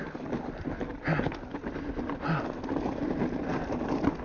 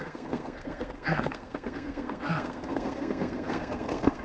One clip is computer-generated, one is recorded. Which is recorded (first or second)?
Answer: first